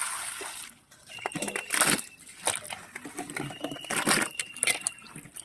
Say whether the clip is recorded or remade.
recorded